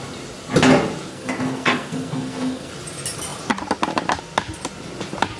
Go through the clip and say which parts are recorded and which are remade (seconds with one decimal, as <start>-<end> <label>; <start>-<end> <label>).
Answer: 0.0-1.1 recorded; 1.1-2.7 remade; 2.7-5.4 recorded